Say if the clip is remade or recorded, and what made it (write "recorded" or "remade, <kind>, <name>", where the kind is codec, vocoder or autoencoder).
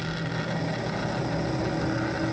recorded